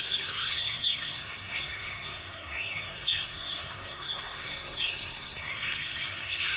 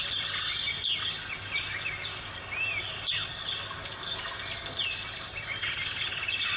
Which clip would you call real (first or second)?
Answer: second